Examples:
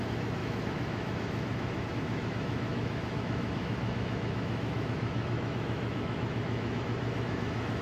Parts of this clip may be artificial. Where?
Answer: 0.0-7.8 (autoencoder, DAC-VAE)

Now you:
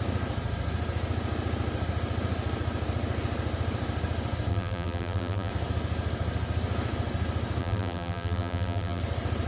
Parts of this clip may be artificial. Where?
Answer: 4.5-5.5 (vocoder, BigVGAN v2); 7.6-9.0

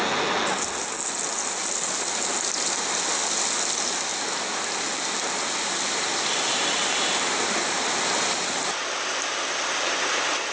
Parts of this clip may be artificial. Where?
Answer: none

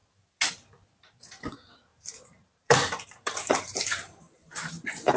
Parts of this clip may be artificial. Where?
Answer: 1.9-5.2 (vocoder, BigVGAN v2)

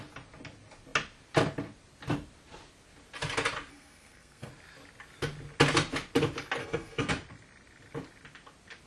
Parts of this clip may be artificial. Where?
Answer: 3.7-4.5 (codec, SNAC); 6.6-7.1

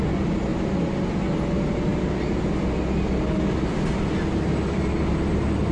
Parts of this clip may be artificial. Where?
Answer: none

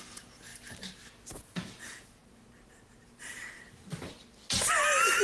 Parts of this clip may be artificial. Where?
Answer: 0.0-0.5 (vocoder, Vocos); 1.4-2.2

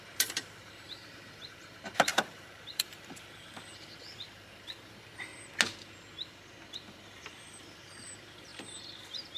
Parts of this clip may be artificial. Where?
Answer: 0.0-5.3 (vocoder, BigVGAN v2); 6.9-8.5; 9.0-9.4